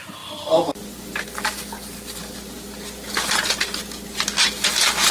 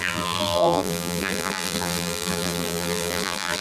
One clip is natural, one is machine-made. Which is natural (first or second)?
first